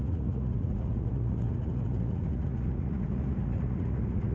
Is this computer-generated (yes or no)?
yes